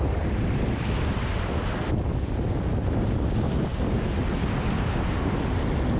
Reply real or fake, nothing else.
real